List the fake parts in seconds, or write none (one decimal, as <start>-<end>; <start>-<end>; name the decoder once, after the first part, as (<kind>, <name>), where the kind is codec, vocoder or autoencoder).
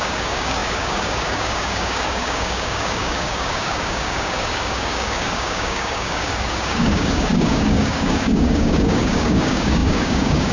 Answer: 0.0-10.5 (codec, DAC)